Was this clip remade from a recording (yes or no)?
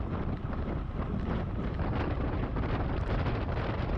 yes